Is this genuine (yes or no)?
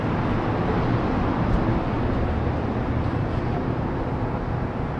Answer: yes